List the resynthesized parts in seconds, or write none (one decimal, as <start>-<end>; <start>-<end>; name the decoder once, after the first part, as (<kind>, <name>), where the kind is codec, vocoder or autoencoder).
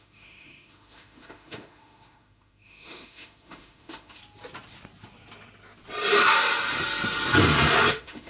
0.0-4.2 (autoencoder, DAC-VAE); 7.9-8.3